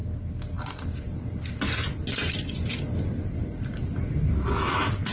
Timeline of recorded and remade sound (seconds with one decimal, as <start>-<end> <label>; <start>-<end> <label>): 0.0-3.5 recorded; 3.5-4.0 remade; 4.0-5.1 recorded